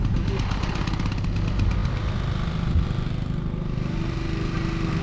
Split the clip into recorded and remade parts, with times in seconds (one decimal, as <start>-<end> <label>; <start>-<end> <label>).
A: 0.0-5.0 recorded